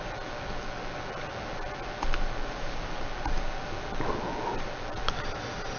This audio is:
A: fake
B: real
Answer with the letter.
B